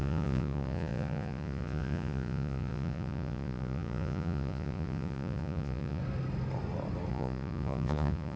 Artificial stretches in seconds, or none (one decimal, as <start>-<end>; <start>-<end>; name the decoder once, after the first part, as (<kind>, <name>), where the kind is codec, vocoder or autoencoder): 0.0-6.0 (vocoder, Vocos); 7.1-8.4